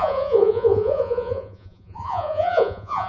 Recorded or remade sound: remade